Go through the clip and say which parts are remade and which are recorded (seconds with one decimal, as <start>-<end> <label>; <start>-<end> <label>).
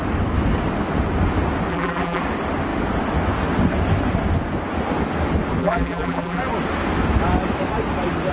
0.0-1.7 recorded; 1.7-2.2 remade; 2.2-5.6 recorded; 5.6-6.4 remade; 6.4-8.3 recorded